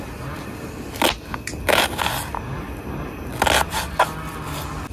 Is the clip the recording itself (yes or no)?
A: yes